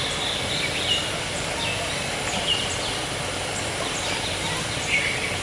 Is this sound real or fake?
real